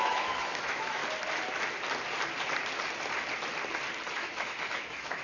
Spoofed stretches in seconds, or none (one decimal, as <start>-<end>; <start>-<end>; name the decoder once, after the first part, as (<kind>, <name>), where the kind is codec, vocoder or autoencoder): 0.0-1.0 (autoencoder, DAC-VAE); 4.1-5.2